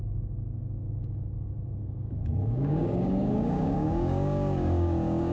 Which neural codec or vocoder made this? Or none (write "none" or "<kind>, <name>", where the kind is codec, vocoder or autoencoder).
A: codec, DAC